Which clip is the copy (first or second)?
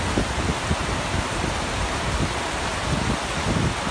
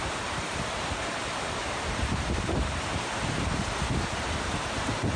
second